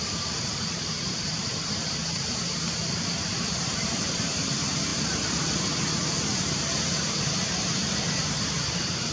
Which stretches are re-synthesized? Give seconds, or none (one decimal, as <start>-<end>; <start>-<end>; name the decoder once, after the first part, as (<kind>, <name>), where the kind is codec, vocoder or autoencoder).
0.0-9.1 (vocoder, BigVGAN v2)